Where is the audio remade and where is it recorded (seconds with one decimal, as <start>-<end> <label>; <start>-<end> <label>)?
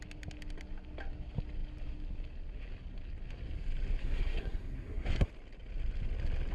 0.0-4.0 recorded; 4.0-5.3 remade; 5.3-6.5 recorded